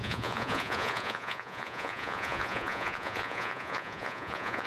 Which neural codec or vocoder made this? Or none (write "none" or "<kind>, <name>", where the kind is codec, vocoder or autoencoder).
vocoder, Vocos